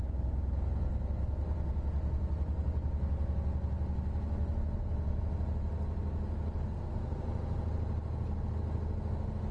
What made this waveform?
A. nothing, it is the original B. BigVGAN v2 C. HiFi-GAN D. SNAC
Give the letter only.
A